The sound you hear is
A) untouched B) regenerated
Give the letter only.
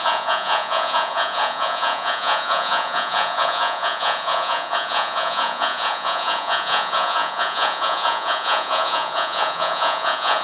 B